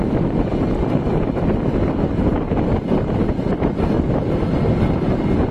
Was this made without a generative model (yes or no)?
yes